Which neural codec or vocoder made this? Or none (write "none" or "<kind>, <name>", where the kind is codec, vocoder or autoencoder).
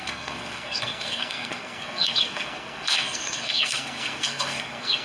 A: codec, SNAC